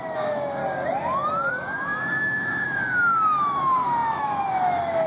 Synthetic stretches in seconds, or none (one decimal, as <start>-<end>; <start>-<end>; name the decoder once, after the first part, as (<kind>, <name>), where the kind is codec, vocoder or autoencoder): 0.0-0.6 (autoencoder, DAC-VAE); 1.5-5.1